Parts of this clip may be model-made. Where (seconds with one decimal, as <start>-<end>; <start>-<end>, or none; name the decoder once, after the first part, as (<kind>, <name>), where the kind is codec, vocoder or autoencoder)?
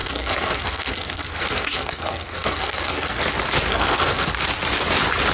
0.0-3.2 (codec, SNAC); 3.7-4.3